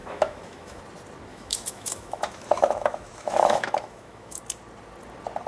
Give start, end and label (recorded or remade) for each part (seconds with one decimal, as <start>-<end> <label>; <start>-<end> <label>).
0.0-0.8 remade; 0.8-1.3 recorded; 1.3-4.4 remade; 4.4-5.5 recorded

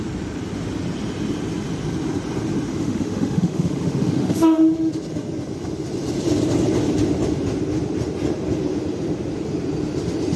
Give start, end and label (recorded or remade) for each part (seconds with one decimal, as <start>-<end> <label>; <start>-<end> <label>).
0.0-2.7 recorded; 2.7-4.9 remade; 4.9-10.4 recorded

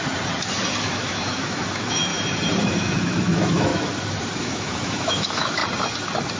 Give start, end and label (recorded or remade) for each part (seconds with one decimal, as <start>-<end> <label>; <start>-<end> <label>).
0.0-0.8 recorded; 0.8-2.1 remade; 2.1-2.6 recorded; 2.6-3.7 remade; 3.7-4.4 recorded; 4.4-5.6 remade; 5.6-6.4 recorded

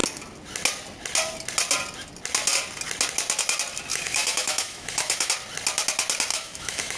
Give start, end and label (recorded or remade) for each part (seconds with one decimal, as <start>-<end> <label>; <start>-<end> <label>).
0.0-3.9 recorded; 3.9-5.3 remade; 5.3-6.3 recorded; 6.3-7.0 remade

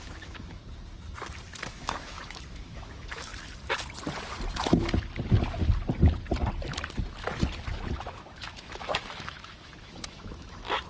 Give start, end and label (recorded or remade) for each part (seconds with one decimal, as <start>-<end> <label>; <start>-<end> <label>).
0.0-0.6 remade; 0.6-1.7 recorded; 1.7-3.3 remade; 3.3-7.9 recorded; 7.9-10.9 remade

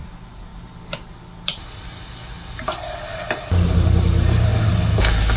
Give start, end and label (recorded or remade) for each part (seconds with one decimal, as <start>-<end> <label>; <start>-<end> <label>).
0.0-5.4 recorded

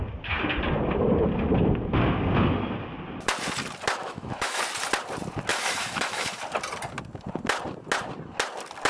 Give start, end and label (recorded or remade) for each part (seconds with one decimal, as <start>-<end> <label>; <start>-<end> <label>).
0.0-4.0 recorded; 4.0-4.6 remade; 4.6-5.5 recorded; 5.5-6.4 remade; 6.4-8.9 recorded

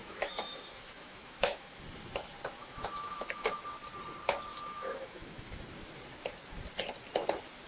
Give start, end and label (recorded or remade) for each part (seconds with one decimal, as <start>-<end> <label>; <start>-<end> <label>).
0.0-1.8 remade; 1.8-2.6 recorded; 2.6-3.6 remade; 3.6-4.5 recorded; 4.5-5.6 remade; 5.6-7.7 recorded